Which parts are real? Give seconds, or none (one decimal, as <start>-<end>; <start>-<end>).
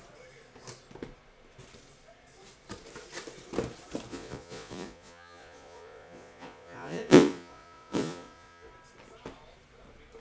0.0-4.1; 8.7-10.2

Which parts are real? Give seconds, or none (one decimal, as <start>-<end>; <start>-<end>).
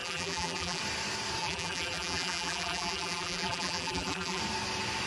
0.8-1.4; 4.4-5.1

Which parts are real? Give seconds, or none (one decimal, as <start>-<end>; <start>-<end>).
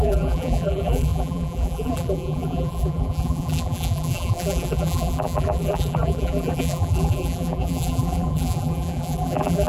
none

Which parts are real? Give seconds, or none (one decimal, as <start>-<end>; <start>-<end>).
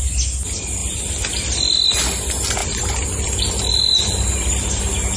0.0-0.8; 2.0-2.6; 4.8-5.2